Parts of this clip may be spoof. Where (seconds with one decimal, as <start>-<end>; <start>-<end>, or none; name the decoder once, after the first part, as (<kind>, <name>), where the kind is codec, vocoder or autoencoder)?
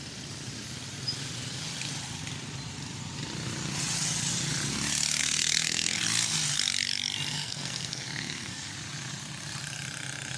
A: 5.2-6.0 (codec, SNAC); 7.3-8.7